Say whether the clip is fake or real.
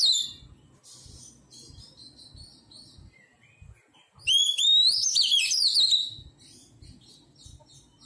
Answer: real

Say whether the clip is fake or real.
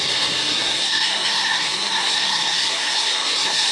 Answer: fake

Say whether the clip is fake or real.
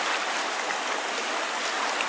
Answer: real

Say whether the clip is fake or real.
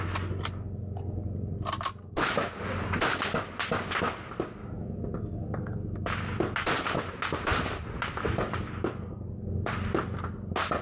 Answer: real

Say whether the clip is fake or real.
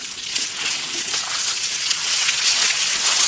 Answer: fake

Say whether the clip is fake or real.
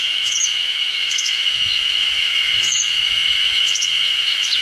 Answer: fake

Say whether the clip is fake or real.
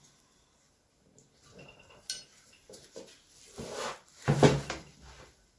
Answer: real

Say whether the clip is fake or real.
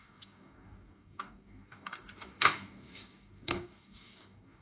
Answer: fake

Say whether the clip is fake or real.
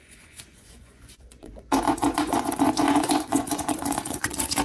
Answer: fake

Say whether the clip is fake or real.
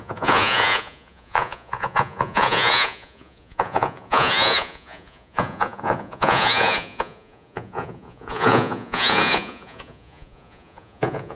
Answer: fake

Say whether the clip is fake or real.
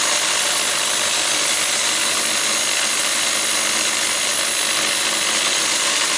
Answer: real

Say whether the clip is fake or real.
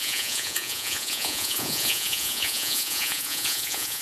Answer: fake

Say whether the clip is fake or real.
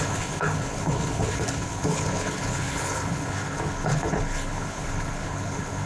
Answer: fake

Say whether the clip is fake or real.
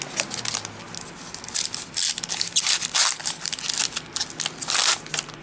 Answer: real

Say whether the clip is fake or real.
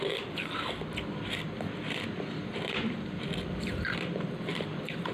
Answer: fake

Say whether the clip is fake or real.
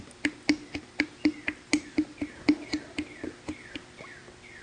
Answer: real